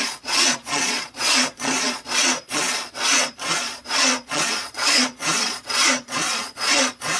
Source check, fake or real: fake